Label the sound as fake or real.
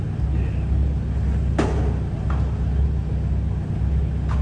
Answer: real